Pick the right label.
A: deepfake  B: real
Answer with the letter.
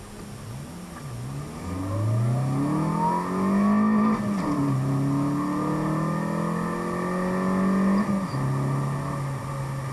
B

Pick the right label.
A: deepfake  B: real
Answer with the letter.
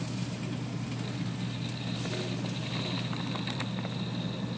B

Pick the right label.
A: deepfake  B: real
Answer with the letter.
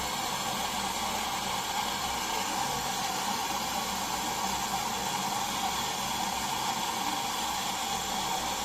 B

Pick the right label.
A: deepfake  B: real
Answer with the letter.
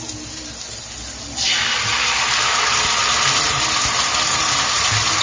B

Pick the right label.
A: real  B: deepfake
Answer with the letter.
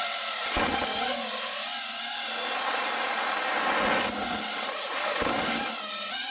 A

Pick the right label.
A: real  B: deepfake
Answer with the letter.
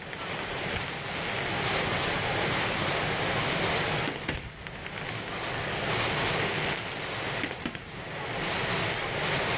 A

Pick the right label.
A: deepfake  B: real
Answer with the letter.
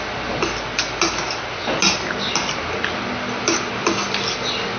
B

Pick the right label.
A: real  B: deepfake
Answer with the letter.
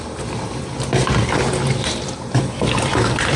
A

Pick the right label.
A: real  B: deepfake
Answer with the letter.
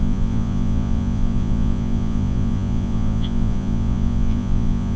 B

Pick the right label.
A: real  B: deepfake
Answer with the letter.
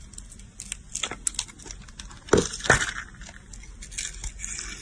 A